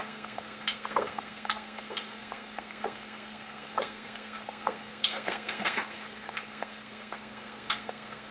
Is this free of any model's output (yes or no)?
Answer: no